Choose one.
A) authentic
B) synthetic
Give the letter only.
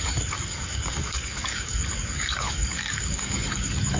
B